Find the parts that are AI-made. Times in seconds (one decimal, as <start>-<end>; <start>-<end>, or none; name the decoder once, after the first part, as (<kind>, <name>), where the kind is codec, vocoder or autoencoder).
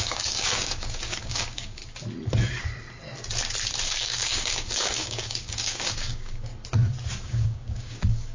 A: 0.0-1.8 (codec, DAC); 3.8-6.5; 7.1-8.3